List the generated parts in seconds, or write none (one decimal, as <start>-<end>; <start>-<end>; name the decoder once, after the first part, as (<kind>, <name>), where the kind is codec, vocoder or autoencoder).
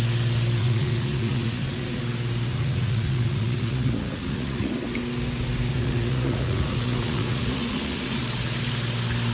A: 0.6-2.0 (vocoder, Vocos); 2.5-4.7; 5.7-8.2